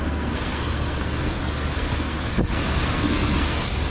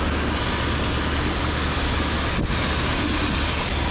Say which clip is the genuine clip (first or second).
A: second